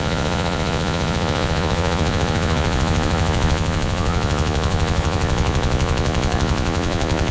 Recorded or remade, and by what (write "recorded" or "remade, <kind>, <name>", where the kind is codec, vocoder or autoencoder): remade, vocoder, Vocos